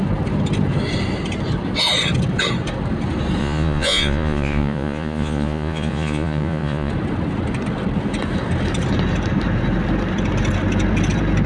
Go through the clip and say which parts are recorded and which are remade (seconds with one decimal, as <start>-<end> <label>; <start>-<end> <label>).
0.0-3.4 recorded; 3.4-6.9 remade; 6.9-11.5 recorded

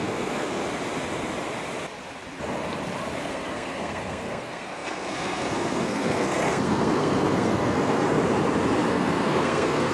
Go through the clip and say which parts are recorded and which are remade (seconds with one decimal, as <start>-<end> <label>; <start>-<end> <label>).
0.0-0.6 remade; 0.6-3.2 recorded; 3.2-8.2 remade; 8.2-8.9 recorded; 8.9-9.9 remade

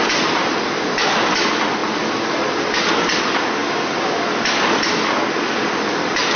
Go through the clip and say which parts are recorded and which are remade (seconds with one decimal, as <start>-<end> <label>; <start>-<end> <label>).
0.0-6.4 recorded